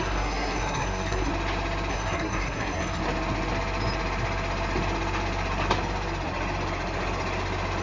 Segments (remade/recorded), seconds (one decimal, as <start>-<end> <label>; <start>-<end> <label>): 0.0-1.3 remade; 1.3-1.9 recorded; 1.9-3.0 remade; 3.0-7.8 recorded